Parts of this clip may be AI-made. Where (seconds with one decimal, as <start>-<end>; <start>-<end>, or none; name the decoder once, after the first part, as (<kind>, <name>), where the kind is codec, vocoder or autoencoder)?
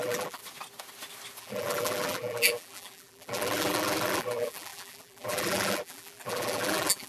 0.0-0.4 (vocoder, BigVGAN v2); 1.4-7.1